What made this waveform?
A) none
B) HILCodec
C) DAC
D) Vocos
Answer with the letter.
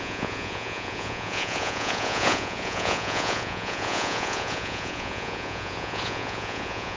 D